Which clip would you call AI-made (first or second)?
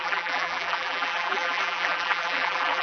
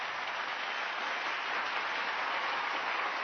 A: first